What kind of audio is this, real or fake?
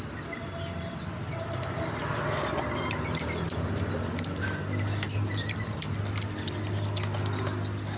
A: real